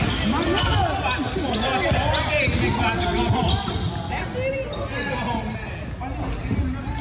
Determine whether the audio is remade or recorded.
recorded